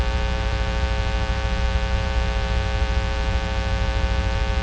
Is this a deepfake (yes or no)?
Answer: yes